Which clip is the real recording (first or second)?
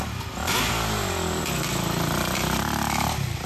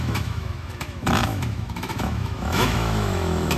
first